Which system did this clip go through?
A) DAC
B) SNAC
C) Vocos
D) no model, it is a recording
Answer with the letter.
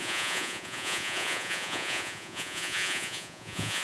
C